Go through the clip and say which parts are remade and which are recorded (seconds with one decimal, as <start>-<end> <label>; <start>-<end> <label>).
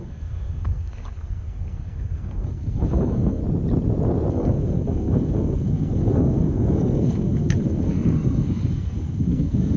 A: 0.0-3.4 remade; 3.4-4.3 recorded; 4.3-9.8 remade